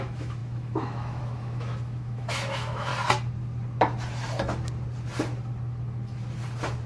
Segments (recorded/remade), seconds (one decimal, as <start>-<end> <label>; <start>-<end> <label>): 0.0-2.9 remade; 2.9-6.9 recorded